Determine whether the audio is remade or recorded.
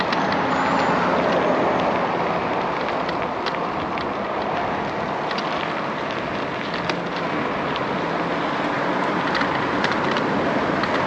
recorded